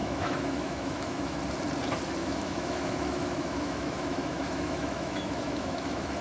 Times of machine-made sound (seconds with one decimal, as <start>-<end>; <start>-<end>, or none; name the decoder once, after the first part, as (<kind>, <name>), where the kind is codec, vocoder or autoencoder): 0.0-1.4 (autoencoder, DAC-VAE); 2.2-6.2

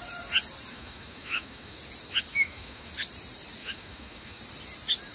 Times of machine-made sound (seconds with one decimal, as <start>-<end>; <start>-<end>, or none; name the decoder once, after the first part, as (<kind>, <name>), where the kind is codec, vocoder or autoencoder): 0.7-1.8 (autoencoder, DAC-VAE); 2.3-2.9; 3.6-4.4

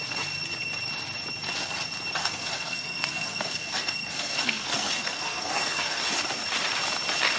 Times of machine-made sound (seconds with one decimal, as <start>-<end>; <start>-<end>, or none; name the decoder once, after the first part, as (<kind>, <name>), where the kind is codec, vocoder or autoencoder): 2.2-6.0 (codec, SNAC)

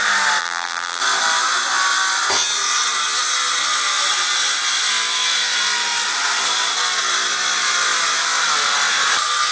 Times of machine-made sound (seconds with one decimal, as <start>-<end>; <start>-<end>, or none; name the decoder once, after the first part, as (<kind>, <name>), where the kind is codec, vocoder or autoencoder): 0.4-1.0 (vocoder, BigVGAN v2)

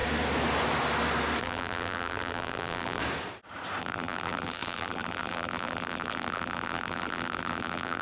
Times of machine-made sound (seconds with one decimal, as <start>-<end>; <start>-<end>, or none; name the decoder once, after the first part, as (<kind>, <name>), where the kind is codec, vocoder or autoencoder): 1.4-3.0 (vocoder, BigVGAN v2); 3.8-8.0

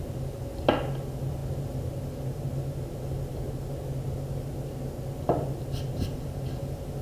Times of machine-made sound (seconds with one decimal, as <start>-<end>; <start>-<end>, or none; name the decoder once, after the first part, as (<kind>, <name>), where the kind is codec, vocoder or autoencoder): none